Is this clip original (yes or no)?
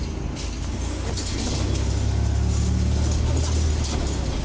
yes